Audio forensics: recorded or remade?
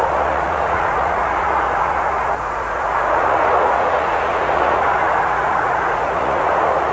remade